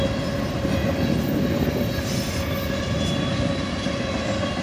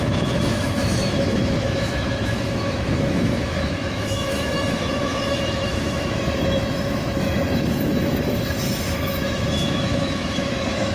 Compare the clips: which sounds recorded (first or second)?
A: first